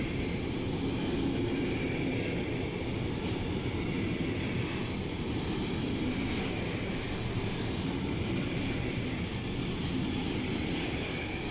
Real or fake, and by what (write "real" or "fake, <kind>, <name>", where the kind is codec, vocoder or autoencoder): real